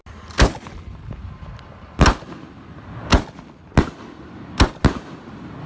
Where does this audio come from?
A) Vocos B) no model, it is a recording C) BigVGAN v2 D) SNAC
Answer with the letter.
B